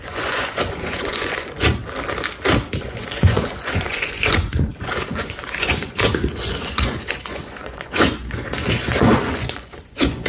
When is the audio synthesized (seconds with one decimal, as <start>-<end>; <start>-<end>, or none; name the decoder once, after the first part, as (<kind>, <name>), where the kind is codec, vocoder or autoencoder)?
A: 0.0-1.8 (vocoder, Vocos); 2.8-10.3